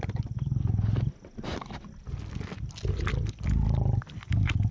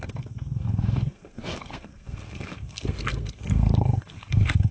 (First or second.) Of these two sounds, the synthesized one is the second